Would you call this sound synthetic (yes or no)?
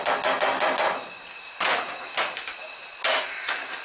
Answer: no